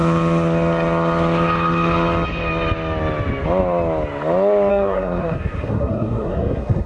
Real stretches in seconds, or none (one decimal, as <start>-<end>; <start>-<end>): 0.0-4.7